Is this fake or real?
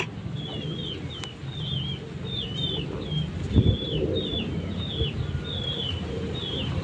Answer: real